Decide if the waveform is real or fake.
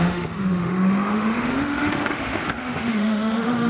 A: fake